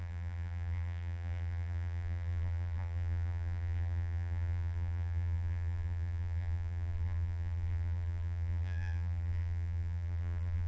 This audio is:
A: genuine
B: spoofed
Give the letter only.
B